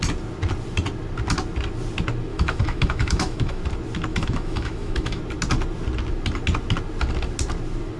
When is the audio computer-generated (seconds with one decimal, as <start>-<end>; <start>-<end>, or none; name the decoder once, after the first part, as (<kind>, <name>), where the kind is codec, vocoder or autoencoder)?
2.3-3.6 (autoencoder, DAC-VAE); 4.1-5.2